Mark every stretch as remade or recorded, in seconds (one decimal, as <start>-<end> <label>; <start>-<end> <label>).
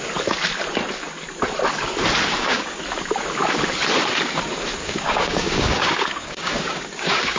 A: 0.0-2.3 recorded; 2.3-2.8 remade; 2.8-4.8 recorded; 4.8-7.4 remade